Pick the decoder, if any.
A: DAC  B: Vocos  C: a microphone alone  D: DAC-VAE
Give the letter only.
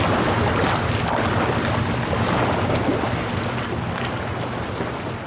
C